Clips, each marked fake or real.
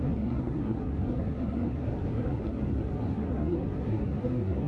fake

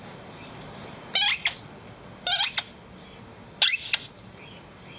real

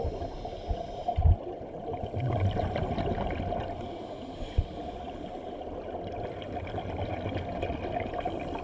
real